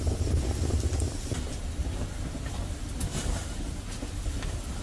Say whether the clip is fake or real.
real